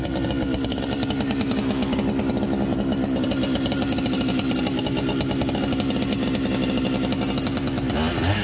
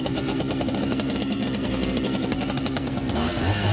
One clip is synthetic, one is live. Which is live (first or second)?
first